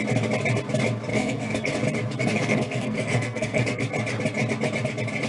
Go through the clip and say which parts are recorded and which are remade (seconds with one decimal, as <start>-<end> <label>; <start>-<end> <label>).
0.0-1.1 recorded; 1.1-1.7 remade; 1.7-2.2 recorded; 2.2-3.8 remade; 3.8-5.3 recorded